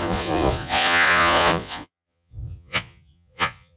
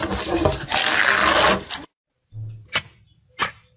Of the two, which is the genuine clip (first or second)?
second